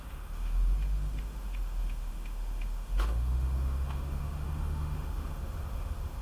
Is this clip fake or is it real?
fake